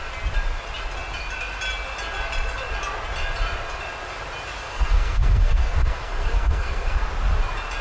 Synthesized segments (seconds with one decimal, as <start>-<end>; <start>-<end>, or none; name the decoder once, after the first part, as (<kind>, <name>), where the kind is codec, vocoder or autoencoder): 4.6-7.0 (codec, SNAC)